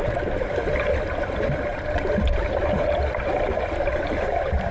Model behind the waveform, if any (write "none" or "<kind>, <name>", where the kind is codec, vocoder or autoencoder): vocoder, BigVGAN v2